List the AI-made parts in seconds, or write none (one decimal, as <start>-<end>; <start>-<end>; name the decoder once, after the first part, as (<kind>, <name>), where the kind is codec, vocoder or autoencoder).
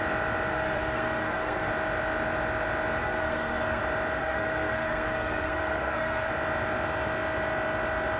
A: 0.5-1.7 (codec, SNAC); 3.0-3.8; 4.2-6.3